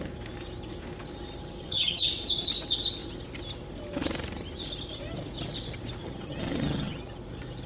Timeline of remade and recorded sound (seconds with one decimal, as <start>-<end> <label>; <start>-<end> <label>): 0.0-1.6 recorded; 1.6-2.1 remade; 2.1-6.0 recorded; 6.0-7.0 remade; 7.0-7.7 recorded